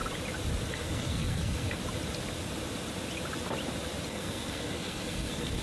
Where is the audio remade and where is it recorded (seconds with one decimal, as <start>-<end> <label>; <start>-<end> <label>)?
0.0-0.7 recorded; 0.7-1.8 remade; 1.8-4.1 recorded; 4.1-5.6 remade